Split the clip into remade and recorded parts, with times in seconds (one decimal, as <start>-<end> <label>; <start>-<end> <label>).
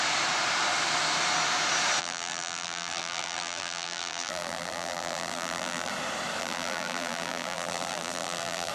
0.0-2.0 recorded; 2.0-5.9 remade; 5.9-6.4 recorded; 6.4-8.7 remade